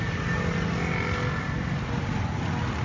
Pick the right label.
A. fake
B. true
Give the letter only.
B